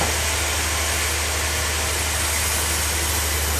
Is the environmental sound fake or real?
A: real